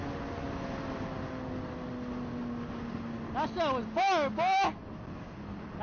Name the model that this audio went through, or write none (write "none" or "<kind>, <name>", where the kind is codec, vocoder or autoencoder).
none